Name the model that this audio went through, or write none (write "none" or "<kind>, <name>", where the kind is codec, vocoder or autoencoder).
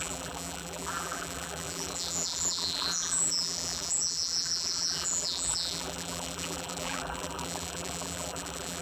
vocoder, BigVGAN v2